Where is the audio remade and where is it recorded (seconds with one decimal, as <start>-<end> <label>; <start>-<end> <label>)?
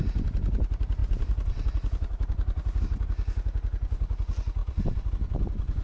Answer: 0.0-1.0 recorded; 1.0-2.8 remade; 2.8-4.6 recorded; 4.6-5.1 remade; 5.1-5.8 recorded